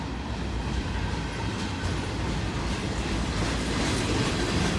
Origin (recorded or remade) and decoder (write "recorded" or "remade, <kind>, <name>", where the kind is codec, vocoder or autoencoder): recorded